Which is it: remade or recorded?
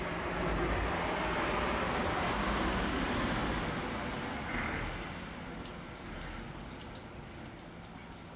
recorded